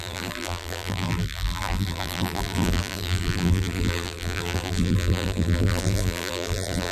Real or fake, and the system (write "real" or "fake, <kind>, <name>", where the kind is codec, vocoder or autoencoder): fake, vocoder, BigVGAN v2